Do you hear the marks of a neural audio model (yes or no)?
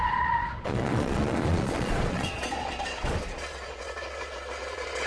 yes